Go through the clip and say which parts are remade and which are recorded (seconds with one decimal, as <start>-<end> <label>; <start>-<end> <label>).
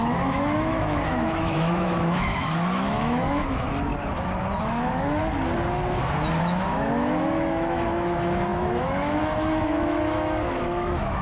0.0-3.9 remade; 3.9-4.6 recorded; 4.6-5.2 remade; 5.2-6.4 recorded; 6.4-11.2 remade